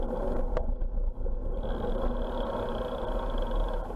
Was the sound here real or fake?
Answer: real